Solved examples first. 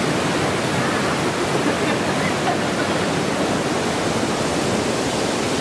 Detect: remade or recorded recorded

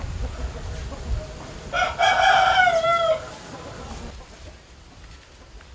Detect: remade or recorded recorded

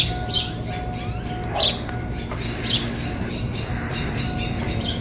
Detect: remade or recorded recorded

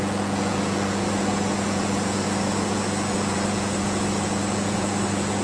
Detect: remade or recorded remade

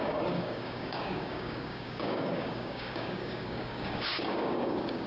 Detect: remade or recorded remade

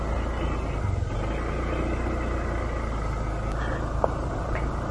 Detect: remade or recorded recorded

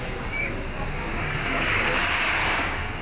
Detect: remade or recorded remade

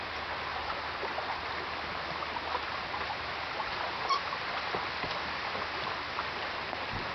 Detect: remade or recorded recorded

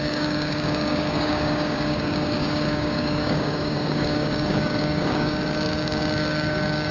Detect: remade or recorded remade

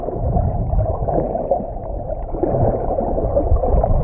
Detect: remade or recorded remade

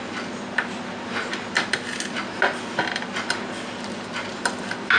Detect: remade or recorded recorded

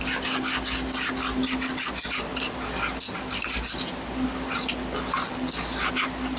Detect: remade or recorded recorded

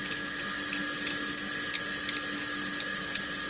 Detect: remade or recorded recorded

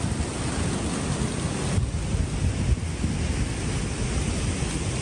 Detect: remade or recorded recorded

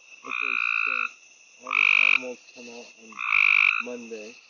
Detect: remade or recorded recorded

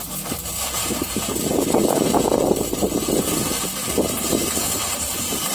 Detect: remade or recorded remade